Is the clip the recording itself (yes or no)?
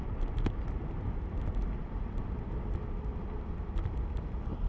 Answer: no